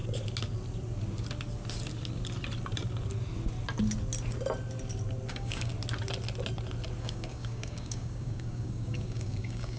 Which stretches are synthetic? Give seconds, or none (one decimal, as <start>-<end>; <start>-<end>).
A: 5.3-5.7; 7.0-9.8